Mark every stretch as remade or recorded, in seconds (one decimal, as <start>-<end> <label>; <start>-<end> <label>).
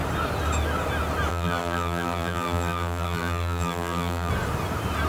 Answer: 0.0-1.3 recorded; 1.3-4.3 remade; 4.3-5.1 recorded